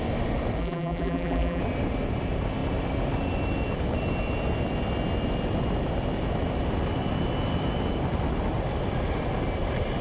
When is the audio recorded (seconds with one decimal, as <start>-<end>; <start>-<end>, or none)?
0.0-0.6; 1.6-10.0